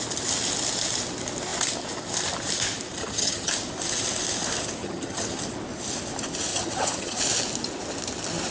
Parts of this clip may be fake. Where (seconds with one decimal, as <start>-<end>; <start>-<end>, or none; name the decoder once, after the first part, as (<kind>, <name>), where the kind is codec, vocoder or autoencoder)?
3.0-3.5 (vocoder, HiFi-GAN); 4.8-5.4; 6.5-7.2